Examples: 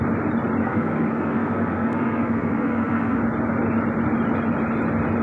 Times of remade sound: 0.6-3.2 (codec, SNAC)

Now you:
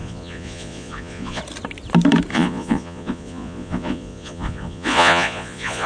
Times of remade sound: 0.0-1.4 (vocoder, Vocos); 2.3-5.9

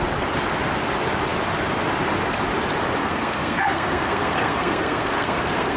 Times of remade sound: 3.0-5.8 (codec, SNAC)

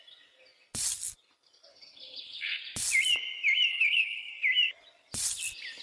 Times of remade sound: 1.7-2.6 (codec, HILCodec); 3.7-4.3

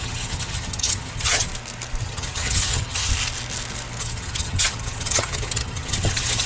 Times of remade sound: 0.0-1.5 (vocoder, HiFi-GAN); 2.0-3.1; 4.0-6.5

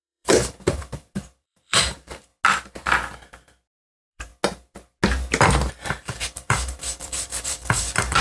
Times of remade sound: 0.0-2.3 (vocoder, BigVGAN v2); 3.8-4.3; 5.7-8.2

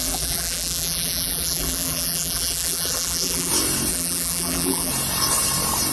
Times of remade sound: 0.0-3.5 (vocoder, BigVGAN v2); 3.9-4.9

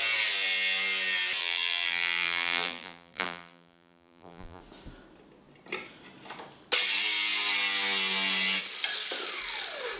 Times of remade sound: 1.4-4.6 (vocoder, BigVGAN v2)